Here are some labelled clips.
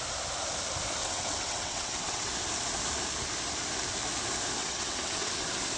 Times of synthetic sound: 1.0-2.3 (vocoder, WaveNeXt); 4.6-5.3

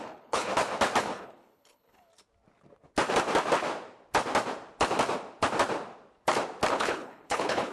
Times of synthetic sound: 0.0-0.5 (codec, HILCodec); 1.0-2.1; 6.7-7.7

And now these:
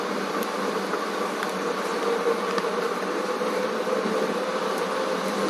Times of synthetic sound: none

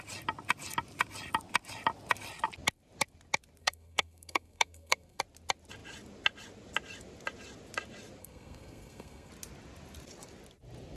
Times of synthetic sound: 3.6-5.2 (codec, SNAC); 8.2-9.3

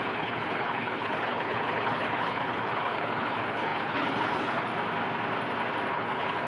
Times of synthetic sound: 0.0-4.7 (codec, HILCodec); 5.9-6.5

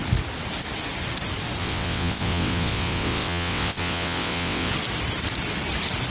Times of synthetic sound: 1.6-4.7 (vocoder, WaveNeXt)

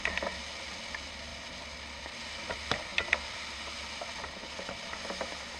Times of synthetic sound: none